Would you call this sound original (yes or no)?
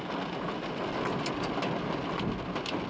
yes